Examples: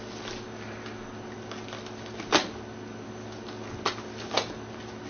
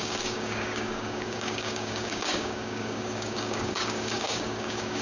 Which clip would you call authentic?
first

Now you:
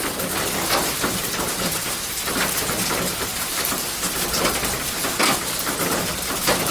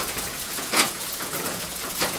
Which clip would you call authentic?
first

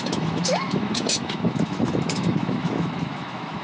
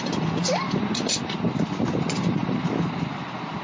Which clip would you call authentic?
second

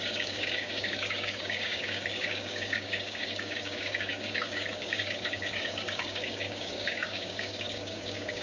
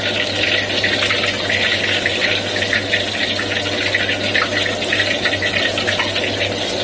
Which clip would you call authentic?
second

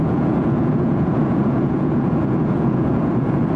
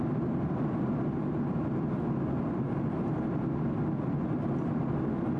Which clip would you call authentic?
second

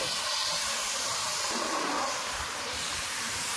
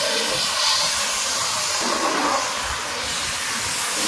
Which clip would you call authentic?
second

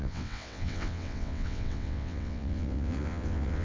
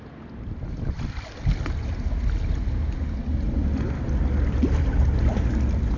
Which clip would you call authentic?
second